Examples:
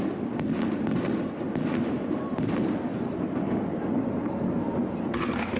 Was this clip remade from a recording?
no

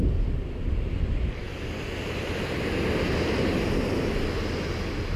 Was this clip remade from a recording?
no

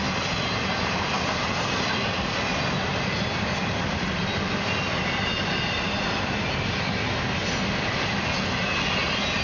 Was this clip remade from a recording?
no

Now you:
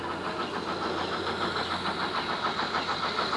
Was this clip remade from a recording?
no